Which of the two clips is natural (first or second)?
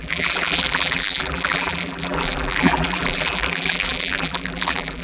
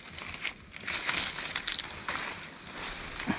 second